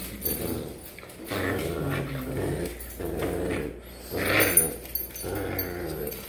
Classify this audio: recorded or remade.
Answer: recorded